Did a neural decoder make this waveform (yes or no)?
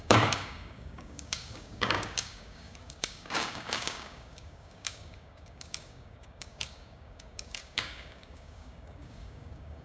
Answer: yes